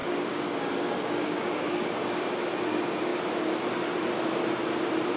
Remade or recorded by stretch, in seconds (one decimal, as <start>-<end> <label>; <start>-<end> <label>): 0.0-2.5 remade; 2.5-5.2 recorded